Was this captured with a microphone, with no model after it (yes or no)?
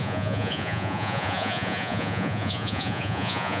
no